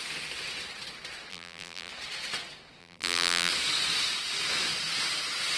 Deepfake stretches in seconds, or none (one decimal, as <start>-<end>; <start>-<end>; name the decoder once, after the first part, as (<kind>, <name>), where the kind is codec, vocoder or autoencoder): 1.3-1.9 (vocoder, BigVGAN v2); 2.8-3.5